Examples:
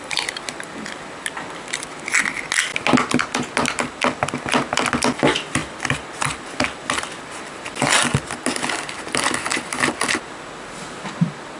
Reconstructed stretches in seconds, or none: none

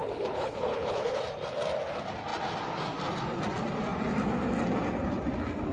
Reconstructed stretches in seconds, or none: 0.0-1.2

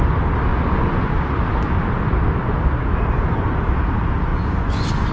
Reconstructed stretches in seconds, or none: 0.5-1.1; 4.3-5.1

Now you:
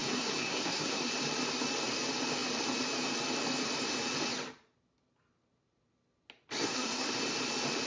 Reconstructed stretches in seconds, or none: 0.0-1.1; 6.6-7.1